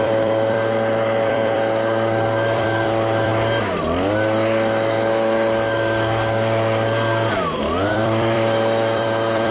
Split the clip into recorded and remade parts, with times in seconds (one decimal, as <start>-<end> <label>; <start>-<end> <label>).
0.0-3.3 remade; 3.3-7.9 recorded; 7.9-9.5 remade